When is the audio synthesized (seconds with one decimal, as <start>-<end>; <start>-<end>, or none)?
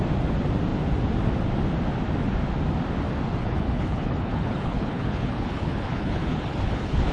3.4-7.1